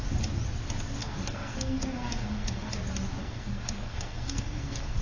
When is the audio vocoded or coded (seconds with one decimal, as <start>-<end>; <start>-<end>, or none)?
1.0-2.7; 3.2-5.0